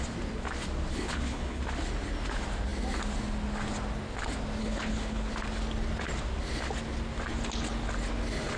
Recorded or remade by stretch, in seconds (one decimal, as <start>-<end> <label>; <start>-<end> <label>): 0.0-0.9 recorded; 0.9-1.6 remade; 1.6-4.6 recorded; 4.6-5.3 remade; 5.3-8.6 recorded